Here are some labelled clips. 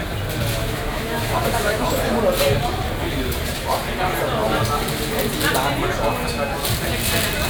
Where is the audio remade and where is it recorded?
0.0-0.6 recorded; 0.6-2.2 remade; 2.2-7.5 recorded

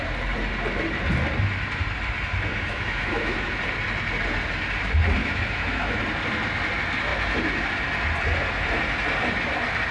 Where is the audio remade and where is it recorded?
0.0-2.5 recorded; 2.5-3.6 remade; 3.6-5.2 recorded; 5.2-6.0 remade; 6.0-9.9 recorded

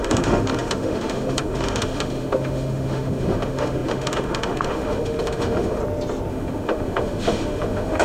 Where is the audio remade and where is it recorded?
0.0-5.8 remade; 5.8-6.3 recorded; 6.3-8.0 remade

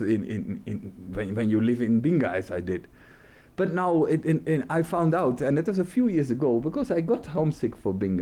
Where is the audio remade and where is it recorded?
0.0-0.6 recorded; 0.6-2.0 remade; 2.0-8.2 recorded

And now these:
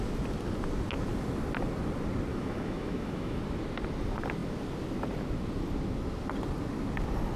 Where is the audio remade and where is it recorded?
0.0-2.3 recorded; 2.3-3.4 remade; 3.4-7.4 recorded

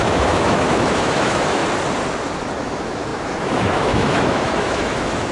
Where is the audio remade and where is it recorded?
0.0-1.6 remade; 1.6-2.6 recorded; 2.6-5.3 remade

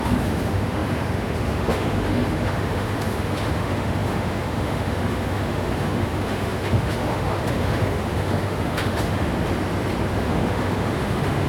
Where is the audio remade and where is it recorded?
0.0-9.3 remade; 9.3-10.1 recorded; 10.1-11.5 remade

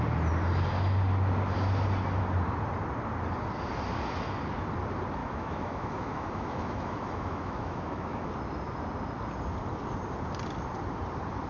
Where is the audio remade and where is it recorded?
0.0-5.2 recorded; 5.2-8.3 remade; 8.3-11.5 recorded